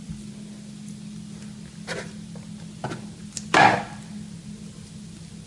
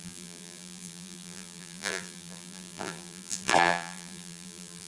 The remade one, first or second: second